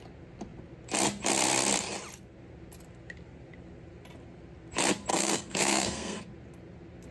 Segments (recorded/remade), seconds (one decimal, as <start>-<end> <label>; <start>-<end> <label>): 0.0-5.1 recorded; 5.1-6.2 remade; 6.2-7.1 recorded